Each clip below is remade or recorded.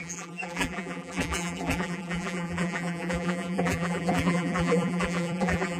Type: remade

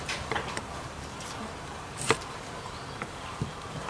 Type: remade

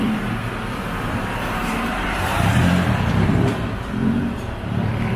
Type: remade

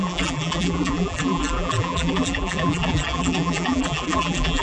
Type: remade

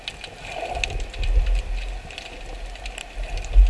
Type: recorded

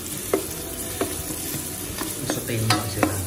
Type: recorded